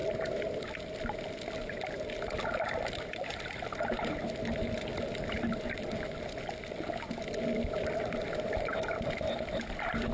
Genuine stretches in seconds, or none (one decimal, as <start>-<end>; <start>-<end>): 0.0-10.1